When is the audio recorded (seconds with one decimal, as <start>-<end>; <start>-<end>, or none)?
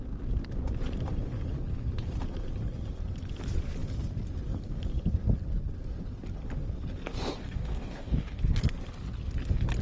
0.0-7.4; 8.4-9.8